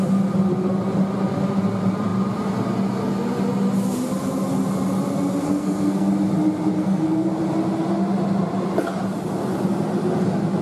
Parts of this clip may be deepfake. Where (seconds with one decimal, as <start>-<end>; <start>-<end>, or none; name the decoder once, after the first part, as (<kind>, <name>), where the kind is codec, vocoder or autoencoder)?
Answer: 5.4-6.1 (codec, SNAC); 6.7-7.4